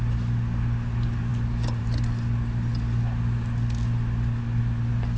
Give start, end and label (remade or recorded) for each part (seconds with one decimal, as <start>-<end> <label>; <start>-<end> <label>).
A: 0.0-5.2 recorded